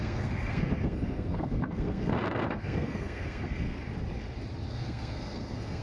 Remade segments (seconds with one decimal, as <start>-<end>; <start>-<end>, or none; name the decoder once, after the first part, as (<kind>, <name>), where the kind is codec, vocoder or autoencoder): 0.0-3.8 (codec, SNAC); 4.7-5.8